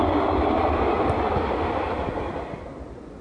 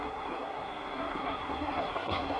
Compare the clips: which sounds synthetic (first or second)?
second